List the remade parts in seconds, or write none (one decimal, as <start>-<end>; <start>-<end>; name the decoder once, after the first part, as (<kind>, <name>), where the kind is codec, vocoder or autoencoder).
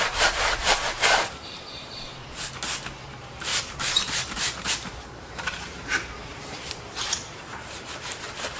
0.0-2.1 (vocoder, BigVGAN v2); 3.0-8.6